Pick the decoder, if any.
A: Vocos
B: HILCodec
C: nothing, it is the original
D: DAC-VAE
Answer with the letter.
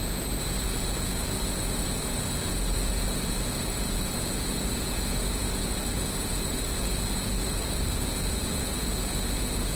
A